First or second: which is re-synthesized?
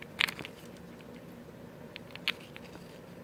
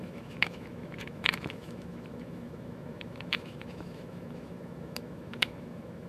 second